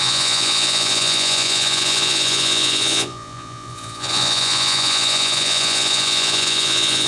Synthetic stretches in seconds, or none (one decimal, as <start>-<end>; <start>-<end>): 0.0-7.1